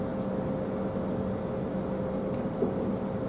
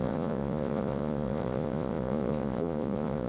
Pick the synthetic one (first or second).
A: second